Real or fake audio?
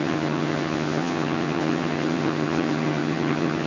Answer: fake